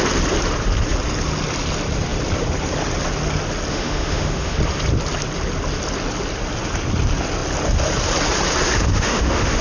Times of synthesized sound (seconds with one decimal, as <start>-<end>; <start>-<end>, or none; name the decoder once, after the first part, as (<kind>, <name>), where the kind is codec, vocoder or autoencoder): 3.7-4.6 (autoencoder, DAC-VAE); 8.9-9.6